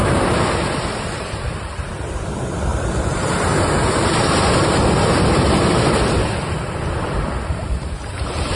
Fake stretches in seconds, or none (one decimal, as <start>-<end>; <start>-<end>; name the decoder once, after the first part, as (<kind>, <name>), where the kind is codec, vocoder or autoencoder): 0.9-8.6 (vocoder, BigVGAN v2)